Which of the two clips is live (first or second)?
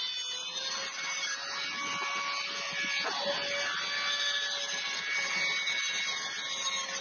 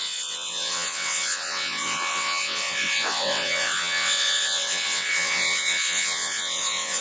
first